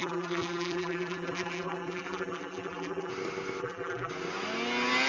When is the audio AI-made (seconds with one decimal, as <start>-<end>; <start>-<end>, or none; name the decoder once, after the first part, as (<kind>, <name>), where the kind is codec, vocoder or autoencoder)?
0.0-3.1 (vocoder, BigVGAN v2); 3.6-4.1